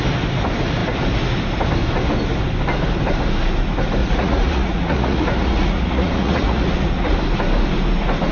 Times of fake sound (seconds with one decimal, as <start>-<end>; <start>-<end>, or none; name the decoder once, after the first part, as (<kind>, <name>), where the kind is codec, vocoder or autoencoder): 4.0-7.2 (vocoder, Vocos)